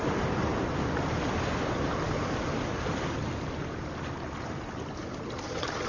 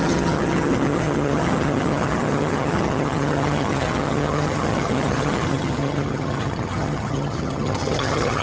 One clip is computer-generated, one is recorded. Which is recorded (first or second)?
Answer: first